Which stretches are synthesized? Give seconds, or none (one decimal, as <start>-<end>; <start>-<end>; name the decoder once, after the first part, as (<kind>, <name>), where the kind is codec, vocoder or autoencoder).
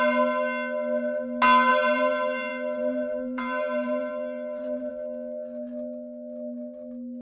1.7-4.9 (vocoder, BigVGAN v2)